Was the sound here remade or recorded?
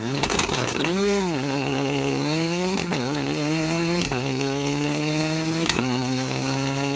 remade